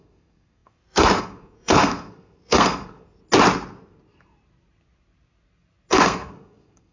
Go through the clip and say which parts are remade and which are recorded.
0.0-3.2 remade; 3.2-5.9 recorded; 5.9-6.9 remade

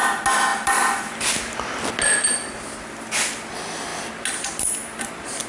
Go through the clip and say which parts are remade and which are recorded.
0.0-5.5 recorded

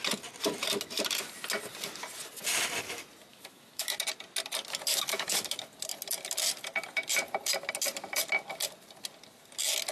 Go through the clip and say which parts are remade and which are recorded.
0.0-3.3 recorded; 3.3-4.0 remade; 4.0-4.9 recorded; 4.9-5.5 remade; 5.5-9.9 recorded